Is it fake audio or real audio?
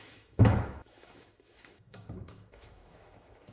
fake